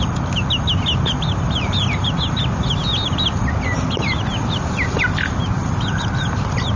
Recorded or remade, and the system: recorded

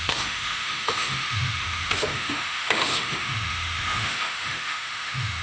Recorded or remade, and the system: remade, autoencoder, DAC-VAE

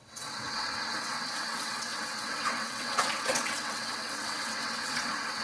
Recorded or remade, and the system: remade, vocoder, WaveNeXt